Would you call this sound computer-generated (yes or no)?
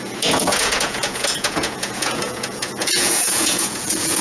yes